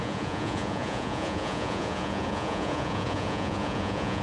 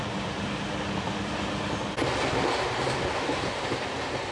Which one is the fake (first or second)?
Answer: first